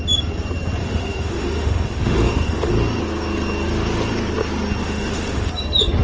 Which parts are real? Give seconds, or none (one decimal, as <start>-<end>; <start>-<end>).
0.0-0.8; 2.7-4.8; 5.5-6.0